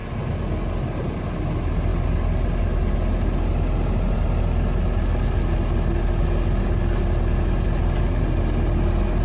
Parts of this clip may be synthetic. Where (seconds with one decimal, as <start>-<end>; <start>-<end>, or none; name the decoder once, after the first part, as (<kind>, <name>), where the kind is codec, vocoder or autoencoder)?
none